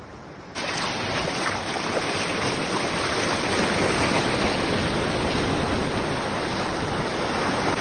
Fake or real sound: real